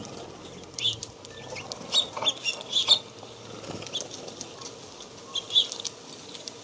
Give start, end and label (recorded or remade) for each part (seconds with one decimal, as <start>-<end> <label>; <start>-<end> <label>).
0.0-6.6 recorded